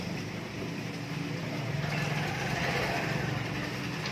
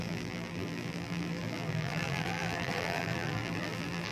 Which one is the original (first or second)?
first